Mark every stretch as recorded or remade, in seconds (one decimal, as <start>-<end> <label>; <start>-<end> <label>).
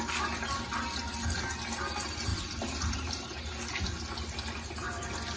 0.0-2.3 recorded; 2.3-3.1 remade; 3.1-5.4 recorded